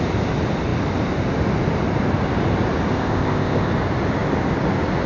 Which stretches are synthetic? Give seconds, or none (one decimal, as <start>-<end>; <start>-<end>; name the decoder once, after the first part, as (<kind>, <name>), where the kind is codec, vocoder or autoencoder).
2.9-3.7 (codec, ZipCodec)